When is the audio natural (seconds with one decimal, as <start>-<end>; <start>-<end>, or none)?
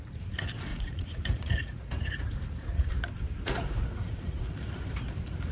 0.0-0.7; 2.9-3.4; 4.5-5.5